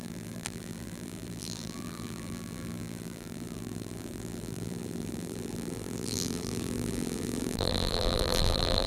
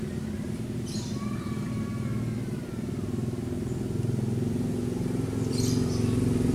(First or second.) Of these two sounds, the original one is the second